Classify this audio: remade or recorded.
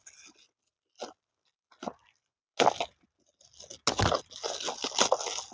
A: recorded